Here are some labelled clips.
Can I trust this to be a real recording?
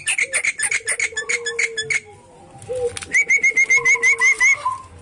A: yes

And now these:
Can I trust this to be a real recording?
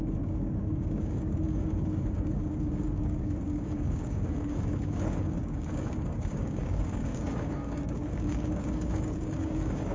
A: no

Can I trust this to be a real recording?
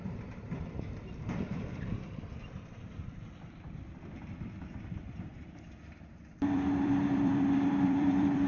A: no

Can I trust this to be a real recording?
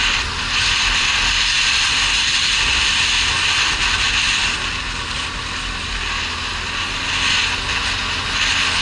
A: yes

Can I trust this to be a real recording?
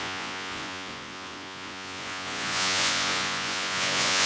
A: no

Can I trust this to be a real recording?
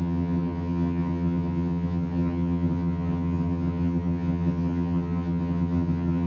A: no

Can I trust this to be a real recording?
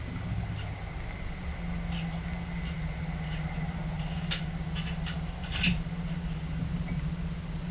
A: yes